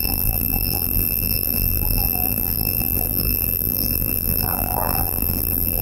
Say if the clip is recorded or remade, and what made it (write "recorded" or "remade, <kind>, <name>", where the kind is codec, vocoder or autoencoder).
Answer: remade, vocoder, BigVGAN v2